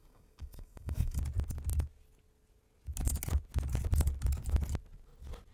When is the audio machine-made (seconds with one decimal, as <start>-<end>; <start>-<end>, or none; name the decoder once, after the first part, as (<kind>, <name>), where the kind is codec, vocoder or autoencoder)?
0.0-1.2 (codec, DAC)